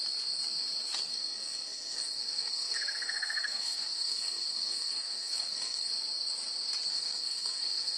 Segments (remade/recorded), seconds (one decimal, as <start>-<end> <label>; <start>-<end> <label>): 0.0-1.1 recorded; 1.1-5.9 remade; 5.9-6.9 recorded; 6.9-8.0 remade